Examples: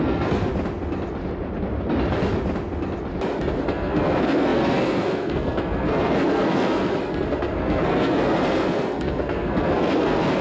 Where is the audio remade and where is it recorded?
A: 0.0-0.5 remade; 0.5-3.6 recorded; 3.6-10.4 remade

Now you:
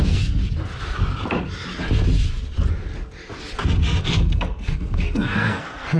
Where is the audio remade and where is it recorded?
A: 0.0-0.4 remade; 0.4-4.0 recorded; 4.0-6.0 remade

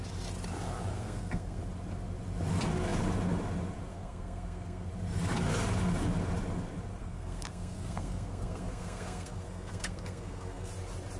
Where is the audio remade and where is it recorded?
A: 0.0-0.9 recorded; 0.9-1.6 remade; 1.6-3.9 recorded; 3.9-4.9 remade; 4.9-7.0 recorded; 7.0-10.7 remade; 10.7-11.2 recorded

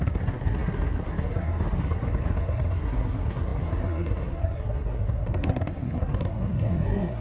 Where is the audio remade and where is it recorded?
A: 0.0-7.2 remade

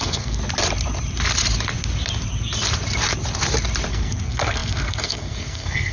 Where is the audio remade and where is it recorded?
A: 0.0-0.4 remade; 0.4-3.9 recorded; 3.9-5.9 remade

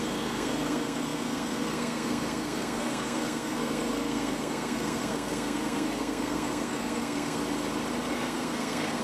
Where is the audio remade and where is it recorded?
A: 0.0-7.4 remade; 7.4-8.1 recorded; 8.1-9.0 remade

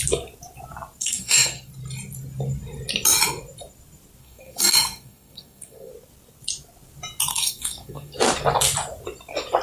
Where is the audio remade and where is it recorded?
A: 0.0-1.0 recorded; 1.0-1.7 remade; 1.7-4.2 recorded; 4.2-5.9 remade; 5.9-7.3 recorded; 7.3-8.2 remade; 8.2-9.6 recorded

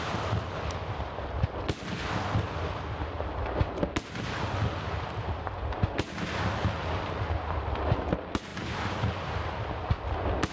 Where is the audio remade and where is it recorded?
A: 0.0-10.5 recorded